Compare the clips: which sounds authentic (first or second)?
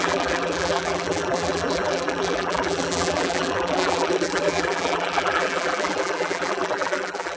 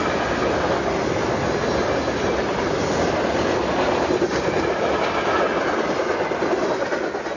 second